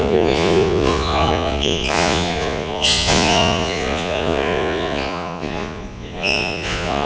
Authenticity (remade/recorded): remade